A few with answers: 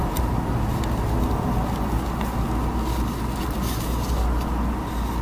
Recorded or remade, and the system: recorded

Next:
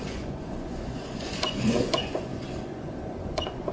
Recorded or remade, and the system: remade, vocoder, Vocos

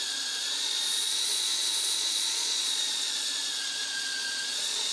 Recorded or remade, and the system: remade, vocoder, Vocos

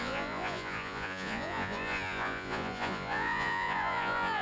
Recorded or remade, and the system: remade, vocoder, Vocos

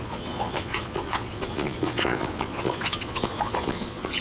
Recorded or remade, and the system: remade, vocoder, Vocos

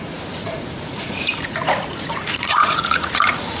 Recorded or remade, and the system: remade, vocoder, Vocos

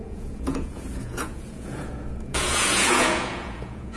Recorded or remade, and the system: remade, vocoder, Vocos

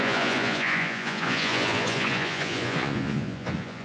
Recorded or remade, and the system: remade, vocoder, Vocos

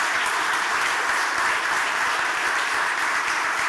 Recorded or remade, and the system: recorded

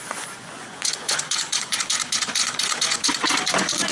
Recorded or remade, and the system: remade, vocoder, Vocos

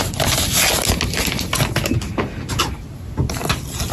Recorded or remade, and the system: recorded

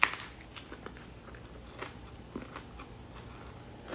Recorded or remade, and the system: recorded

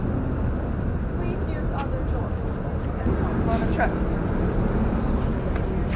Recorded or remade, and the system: recorded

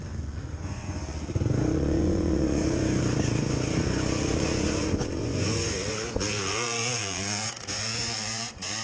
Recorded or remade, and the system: remade, vocoder, Vocos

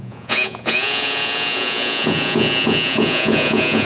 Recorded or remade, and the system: remade, vocoder, Vocos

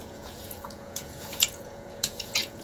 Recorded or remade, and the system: remade, vocoder, Vocos